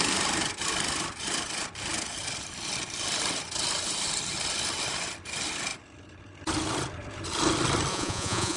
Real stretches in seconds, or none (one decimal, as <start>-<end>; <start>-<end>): 0.0-7.9